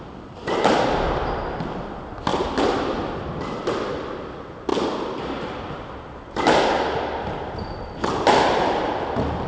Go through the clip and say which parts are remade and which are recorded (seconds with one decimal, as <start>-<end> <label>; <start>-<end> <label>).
0.0-2.3 recorded; 2.3-3.6 remade; 3.6-4.7 recorded; 4.7-5.7 remade; 5.7-9.5 recorded